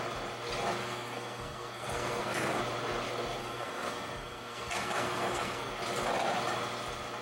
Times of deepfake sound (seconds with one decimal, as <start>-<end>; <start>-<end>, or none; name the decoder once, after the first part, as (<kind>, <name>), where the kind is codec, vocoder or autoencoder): 0.8-2.6 (codec, SNAC); 3.4-5.7